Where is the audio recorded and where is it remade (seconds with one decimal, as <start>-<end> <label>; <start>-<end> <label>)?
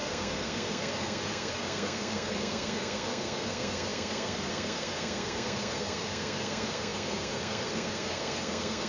0.0-8.9 remade